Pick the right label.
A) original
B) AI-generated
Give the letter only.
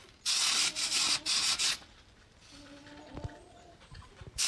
A